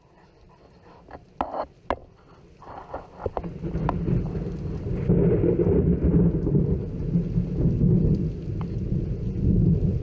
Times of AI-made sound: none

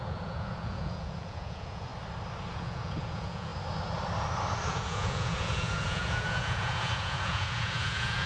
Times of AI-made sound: 0.0-1.9 (vocoder, Vocos); 2.5-3.5; 4.7-8.3

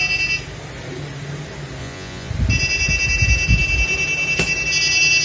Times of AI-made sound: 1.8-2.3 (vocoder, Vocos)